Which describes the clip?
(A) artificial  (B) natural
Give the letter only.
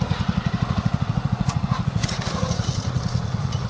A